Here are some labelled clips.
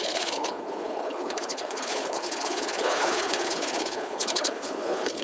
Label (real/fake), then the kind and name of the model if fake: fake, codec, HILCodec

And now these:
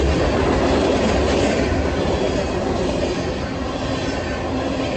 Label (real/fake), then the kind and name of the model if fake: real